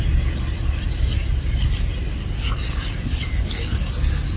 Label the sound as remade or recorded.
recorded